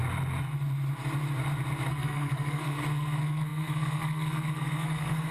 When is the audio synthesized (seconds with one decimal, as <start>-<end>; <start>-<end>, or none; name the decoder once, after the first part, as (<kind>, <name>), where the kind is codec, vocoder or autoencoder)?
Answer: 1.9-5.3 (codec, SNAC)